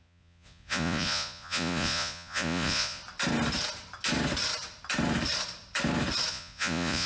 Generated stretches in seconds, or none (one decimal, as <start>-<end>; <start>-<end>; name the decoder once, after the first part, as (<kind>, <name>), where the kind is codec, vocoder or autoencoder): 0.0-3.0 (vocoder, Vocos); 6.3-7.1